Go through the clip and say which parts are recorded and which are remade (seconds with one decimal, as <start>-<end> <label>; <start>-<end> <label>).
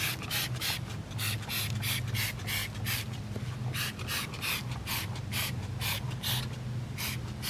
0.0-7.5 recorded